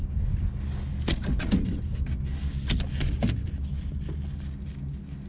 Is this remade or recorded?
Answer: recorded